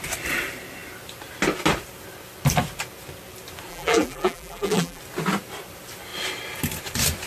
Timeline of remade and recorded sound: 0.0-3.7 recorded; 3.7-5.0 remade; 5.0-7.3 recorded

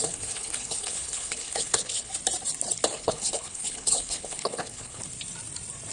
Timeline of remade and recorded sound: 0.0-2.1 remade; 2.1-2.9 recorded; 2.9-5.0 remade; 5.0-5.9 recorded

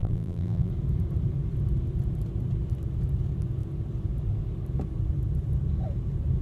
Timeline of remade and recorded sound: 0.0-0.7 remade; 0.7-6.4 recorded

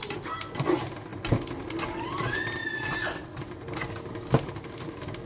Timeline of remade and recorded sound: 0.0-5.3 recorded

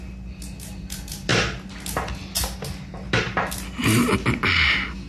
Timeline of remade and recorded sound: 0.0-5.1 recorded

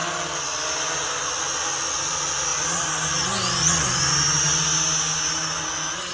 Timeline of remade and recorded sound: 0.0-6.1 recorded

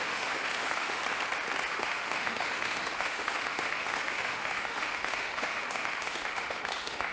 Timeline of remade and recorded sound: 0.0-1.0 remade; 1.0-1.7 recorded; 1.7-7.1 remade